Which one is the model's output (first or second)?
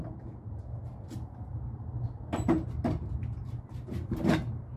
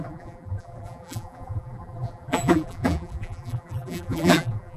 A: second